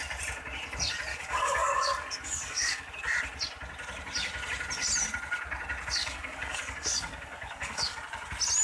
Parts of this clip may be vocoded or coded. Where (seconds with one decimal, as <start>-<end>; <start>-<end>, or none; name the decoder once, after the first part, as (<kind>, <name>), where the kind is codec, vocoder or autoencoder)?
1.1-2.9 (codec, DAC); 6.0-8.0